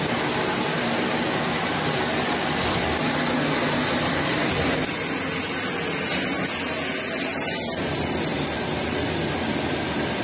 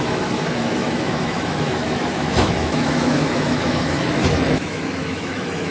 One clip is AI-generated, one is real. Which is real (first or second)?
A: first